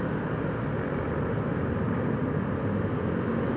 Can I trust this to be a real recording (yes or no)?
yes